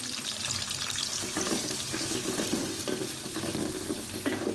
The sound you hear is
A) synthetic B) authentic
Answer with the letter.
B